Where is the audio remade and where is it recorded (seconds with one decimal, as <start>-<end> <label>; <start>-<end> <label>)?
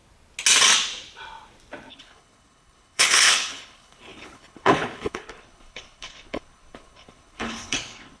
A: 0.0-1.9 recorded; 1.9-8.2 remade